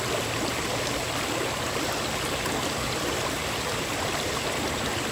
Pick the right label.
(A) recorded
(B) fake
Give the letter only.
A